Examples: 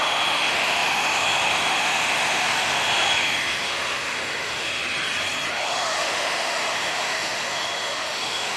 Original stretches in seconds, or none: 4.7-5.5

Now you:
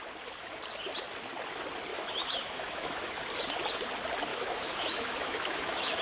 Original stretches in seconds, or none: 0.0-1.9; 3.2-4.3

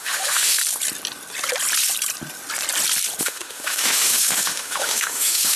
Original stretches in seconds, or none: 0.6-3.2

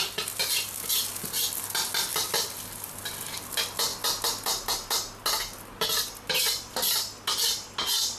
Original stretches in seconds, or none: 0.0-8.2

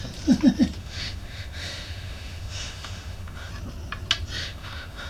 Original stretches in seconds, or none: 0.0-0.8; 3.5-4.4

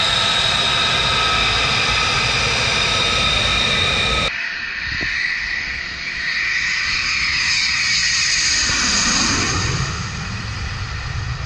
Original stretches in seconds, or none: 0.0-11.5

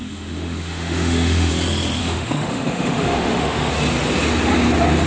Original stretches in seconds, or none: 1.5-2.0; 3.7-5.1

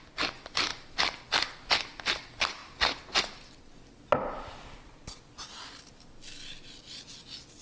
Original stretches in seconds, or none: 0.0-7.6